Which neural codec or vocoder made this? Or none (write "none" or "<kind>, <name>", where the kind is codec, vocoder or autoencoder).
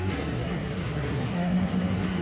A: codec, SNAC